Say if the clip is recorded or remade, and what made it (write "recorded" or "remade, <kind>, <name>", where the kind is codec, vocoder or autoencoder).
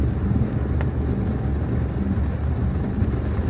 recorded